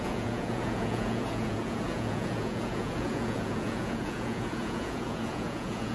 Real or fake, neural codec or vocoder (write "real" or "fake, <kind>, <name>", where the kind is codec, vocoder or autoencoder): fake, vocoder, Vocos